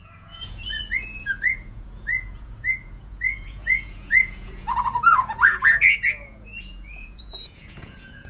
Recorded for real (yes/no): no